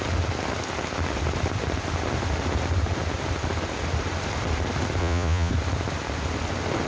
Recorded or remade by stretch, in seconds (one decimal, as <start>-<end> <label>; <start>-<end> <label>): 0.0-5.0 recorded; 5.0-5.5 remade; 5.5-6.9 recorded

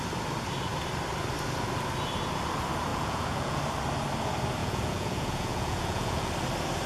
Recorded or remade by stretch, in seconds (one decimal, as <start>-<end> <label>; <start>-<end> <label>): 0.0-2.9 recorded; 2.9-3.6 remade; 3.6-4.6 recorded; 4.6-6.3 remade; 6.3-6.9 recorded

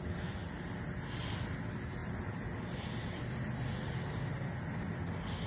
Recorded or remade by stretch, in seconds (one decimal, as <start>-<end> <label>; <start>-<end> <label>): 0.0-0.4 remade; 0.4-1.4 recorded; 1.4-5.5 remade